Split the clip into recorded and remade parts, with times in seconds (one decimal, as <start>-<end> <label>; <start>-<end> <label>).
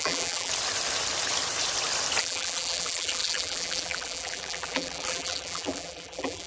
0.0-0.5 remade; 0.5-2.2 recorded; 2.2-6.5 remade